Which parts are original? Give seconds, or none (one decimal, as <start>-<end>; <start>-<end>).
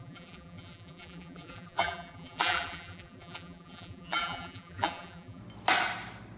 5.4-6.4